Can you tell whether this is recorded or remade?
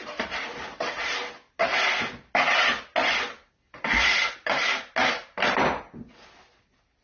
recorded